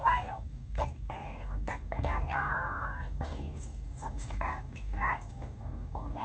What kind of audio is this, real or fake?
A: fake